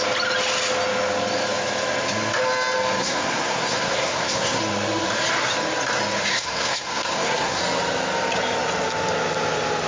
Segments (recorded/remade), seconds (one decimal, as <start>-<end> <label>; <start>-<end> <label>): 0.0-3.0 recorded; 3.0-4.6 remade; 4.6-6.3 recorded; 6.3-7.6 remade; 7.6-9.9 recorded